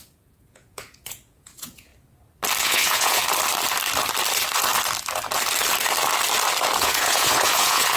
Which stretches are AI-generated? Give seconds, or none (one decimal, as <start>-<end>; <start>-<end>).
0.0-1.9; 2.6-3.2; 6.8-8.0